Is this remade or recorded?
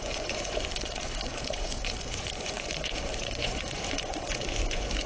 remade